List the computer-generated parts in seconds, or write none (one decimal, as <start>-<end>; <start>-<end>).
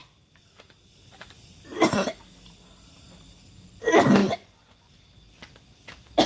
4.2-4.9